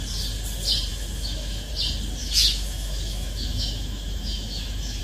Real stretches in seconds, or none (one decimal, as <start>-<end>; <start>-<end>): 0.0-0.9; 1.7-2.2